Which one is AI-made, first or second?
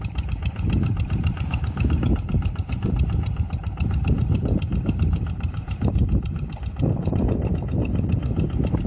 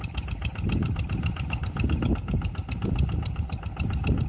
first